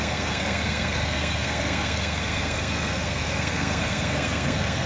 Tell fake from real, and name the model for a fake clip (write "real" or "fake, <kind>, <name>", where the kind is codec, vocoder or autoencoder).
fake, codec, SNAC